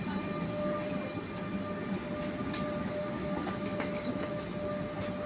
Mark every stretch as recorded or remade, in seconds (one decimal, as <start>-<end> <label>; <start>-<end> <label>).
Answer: 0.0-2.8 recorded; 2.8-4.3 remade; 4.3-5.3 recorded

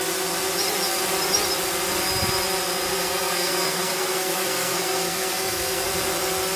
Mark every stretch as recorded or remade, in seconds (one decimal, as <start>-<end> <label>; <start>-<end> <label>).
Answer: 0.0-2.9 recorded; 2.9-5.9 remade; 5.9-6.6 recorded

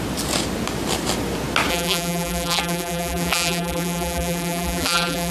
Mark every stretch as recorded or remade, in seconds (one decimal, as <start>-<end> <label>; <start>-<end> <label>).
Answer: 0.0-1.7 recorded; 1.7-5.3 remade

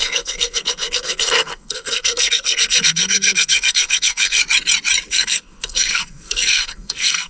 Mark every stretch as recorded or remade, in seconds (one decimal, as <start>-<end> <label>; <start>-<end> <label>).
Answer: 0.0-4.4 remade; 4.4-5.1 recorded; 5.1-7.3 remade

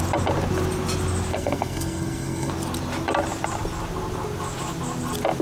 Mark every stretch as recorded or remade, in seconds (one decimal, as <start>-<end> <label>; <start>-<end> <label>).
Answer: 0.0-1.3 recorded; 1.3-2.5 remade; 2.5-5.4 recorded

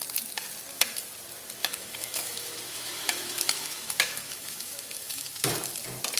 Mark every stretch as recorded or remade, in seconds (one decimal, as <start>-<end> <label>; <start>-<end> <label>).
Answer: 0.0-1.6 recorded; 1.6-5.3 remade; 5.3-6.2 recorded

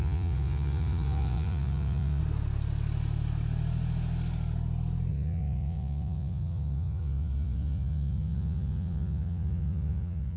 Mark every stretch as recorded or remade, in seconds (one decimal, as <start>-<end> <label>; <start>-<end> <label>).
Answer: 0.0-2.2 remade; 2.2-5.1 recorded; 5.1-10.4 remade